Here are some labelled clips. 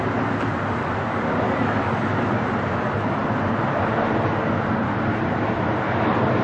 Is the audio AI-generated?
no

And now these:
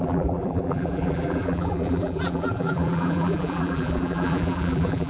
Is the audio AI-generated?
yes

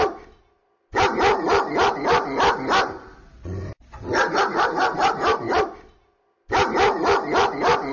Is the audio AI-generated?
no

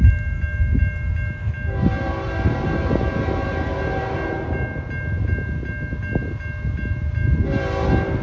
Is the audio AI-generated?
no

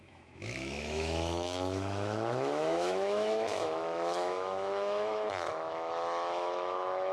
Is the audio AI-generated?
yes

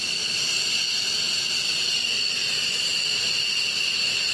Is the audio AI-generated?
no